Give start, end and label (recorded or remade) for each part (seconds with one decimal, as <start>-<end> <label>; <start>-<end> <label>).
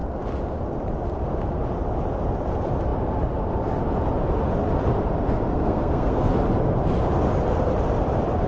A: 0.0-5.5 recorded; 5.5-6.3 remade; 6.3-8.5 recorded